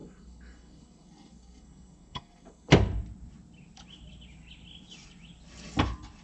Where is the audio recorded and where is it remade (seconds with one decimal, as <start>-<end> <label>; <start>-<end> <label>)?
0.0-2.7 remade; 2.7-6.2 recorded